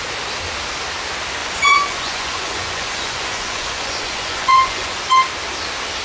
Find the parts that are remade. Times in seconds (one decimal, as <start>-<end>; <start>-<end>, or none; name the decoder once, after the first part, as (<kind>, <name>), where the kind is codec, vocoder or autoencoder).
1.4-5.0 (vocoder, Vocos)